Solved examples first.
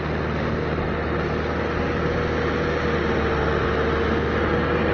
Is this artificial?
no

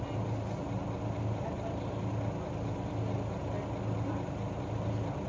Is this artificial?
no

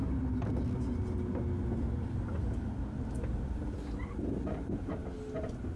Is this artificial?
no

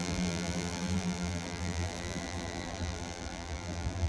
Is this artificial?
yes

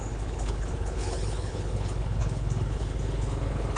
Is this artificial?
yes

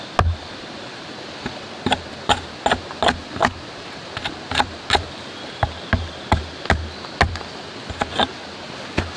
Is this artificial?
no